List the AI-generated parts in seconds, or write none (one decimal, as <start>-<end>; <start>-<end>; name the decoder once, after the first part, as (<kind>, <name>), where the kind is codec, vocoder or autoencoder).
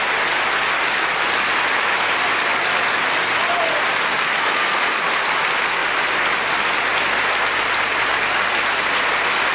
none